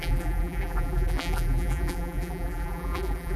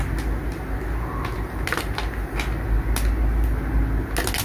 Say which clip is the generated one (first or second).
first